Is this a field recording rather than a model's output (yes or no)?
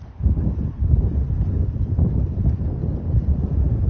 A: yes